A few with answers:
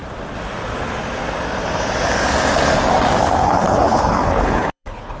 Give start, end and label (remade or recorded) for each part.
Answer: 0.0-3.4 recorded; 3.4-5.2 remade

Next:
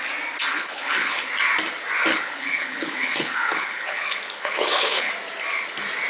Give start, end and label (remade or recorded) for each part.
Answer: 0.0-0.5 recorded; 0.5-1.2 remade; 1.2-2.1 recorded; 2.1-5.1 remade; 5.1-6.1 recorded

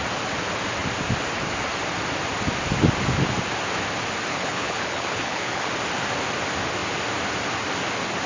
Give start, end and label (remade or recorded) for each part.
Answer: 0.0-4.3 recorded; 4.3-5.7 remade; 5.7-8.3 recorded

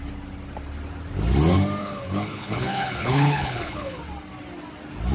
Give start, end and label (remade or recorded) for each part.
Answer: 0.0-1.8 recorded; 1.8-4.0 remade; 4.0-5.1 recorded